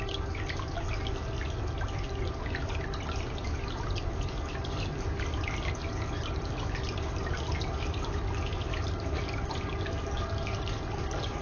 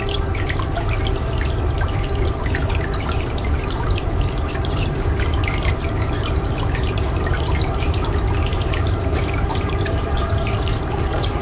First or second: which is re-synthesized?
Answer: second